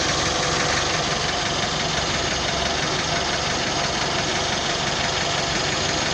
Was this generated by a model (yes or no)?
no